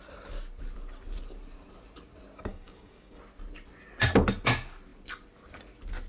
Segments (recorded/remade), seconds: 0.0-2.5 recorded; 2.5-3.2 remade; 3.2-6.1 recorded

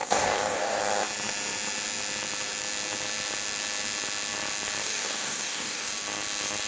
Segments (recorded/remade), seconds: 0.0-0.8 remade; 0.8-4.8 recorded; 4.8-5.9 remade; 5.9-6.7 recorded

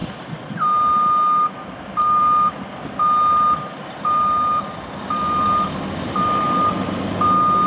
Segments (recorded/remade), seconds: 0.0-7.7 recorded

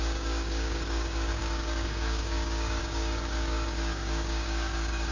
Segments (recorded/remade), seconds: 0.0-5.1 remade

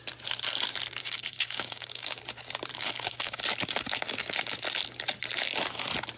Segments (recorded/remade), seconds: 0.0-1.0 recorded; 1.0-2.2 remade; 2.2-2.7 recorded; 2.7-3.4 remade; 3.4-6.2 recorded